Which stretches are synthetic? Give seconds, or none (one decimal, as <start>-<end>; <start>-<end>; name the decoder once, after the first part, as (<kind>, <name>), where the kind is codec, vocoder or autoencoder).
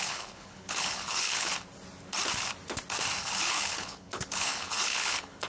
0.0-1.5 (codec, HILCodec); 3.2-5.5